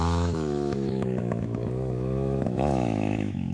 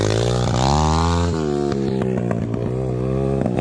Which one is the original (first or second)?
second